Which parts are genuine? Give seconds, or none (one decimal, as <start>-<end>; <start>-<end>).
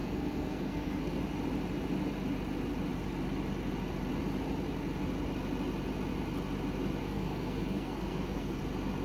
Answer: 1.2-7.0; 8.6-9.0